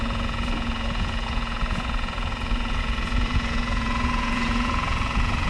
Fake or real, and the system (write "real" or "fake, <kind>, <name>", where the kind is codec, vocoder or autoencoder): fake, vocoder, Vocos